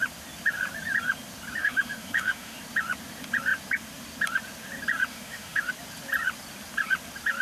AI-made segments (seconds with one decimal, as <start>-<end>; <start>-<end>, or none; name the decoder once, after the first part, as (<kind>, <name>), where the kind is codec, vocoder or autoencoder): 1.6-2.6 (autoencoder, DAC-VAE); 5.1-5.7